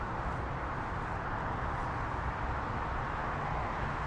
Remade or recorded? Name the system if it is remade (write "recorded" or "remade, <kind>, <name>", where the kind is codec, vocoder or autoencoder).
recorded